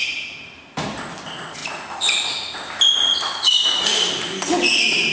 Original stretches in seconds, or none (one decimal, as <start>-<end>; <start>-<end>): 0.0-5.1